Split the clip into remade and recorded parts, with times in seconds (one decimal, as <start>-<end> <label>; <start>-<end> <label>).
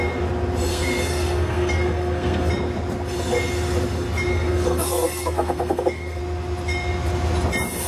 0.0-0.7 recorded; 0.7-2.5 remade; 2.5-4.3 recorded; 4.3-6.2 remade; 6.2-7.9 recorded